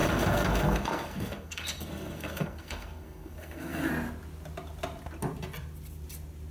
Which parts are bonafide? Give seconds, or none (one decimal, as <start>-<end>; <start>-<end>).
3.9-6.5